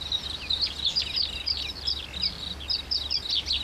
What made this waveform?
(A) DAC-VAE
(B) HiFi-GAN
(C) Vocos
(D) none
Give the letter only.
D